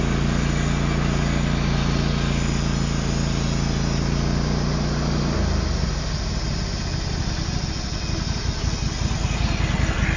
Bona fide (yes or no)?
yes